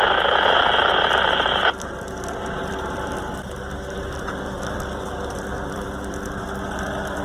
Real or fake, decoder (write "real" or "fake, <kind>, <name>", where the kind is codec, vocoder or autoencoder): fake, vocoder, BigVGAN v2